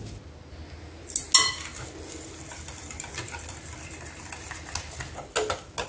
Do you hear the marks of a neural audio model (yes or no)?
no